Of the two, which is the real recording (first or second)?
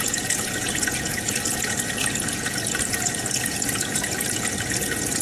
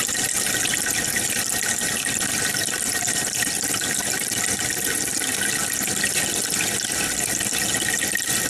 second